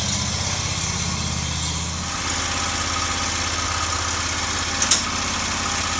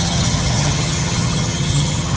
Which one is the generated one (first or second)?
second